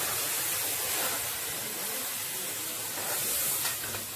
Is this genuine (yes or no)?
yes